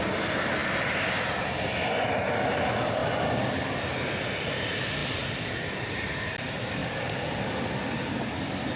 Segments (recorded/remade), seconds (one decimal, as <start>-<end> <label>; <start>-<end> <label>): 0.0-8.8 recorded